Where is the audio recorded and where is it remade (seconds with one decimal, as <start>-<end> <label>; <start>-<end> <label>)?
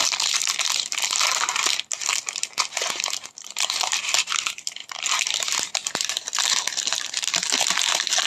0.0-8.3 recorded